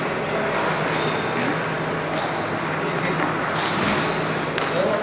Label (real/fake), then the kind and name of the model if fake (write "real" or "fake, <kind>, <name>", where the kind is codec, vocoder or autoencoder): real